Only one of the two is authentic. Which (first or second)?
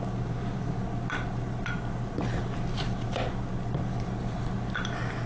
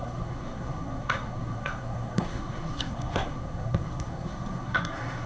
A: first